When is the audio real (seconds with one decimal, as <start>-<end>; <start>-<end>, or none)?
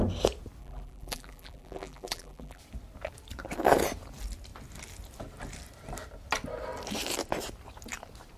0.0-0.6; 2.6-8.4